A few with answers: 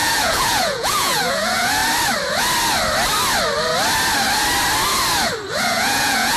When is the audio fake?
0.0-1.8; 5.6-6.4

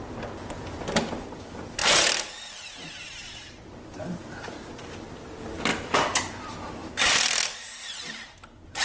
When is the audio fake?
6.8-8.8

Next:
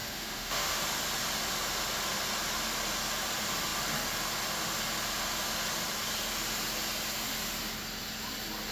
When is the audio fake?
0.0-0.8

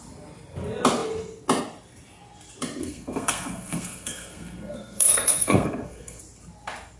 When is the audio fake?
2.8-6.2

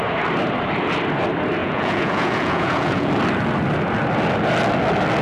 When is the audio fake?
1.6-3.1

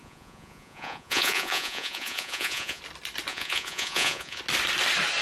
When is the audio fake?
0.0-2.8; 3.3-4.4